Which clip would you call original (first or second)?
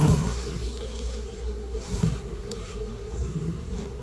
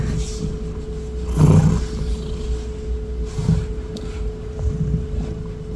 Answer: second